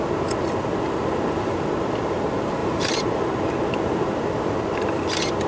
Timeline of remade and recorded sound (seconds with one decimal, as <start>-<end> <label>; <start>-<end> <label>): 0.0-2.6 recorded; 2.6-3.5 remade; 3.5-5.5 recorded